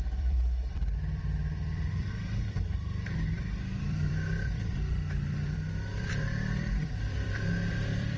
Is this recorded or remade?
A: remade